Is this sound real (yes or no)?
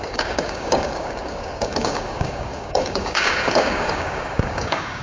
no